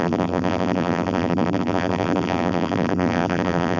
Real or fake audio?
fake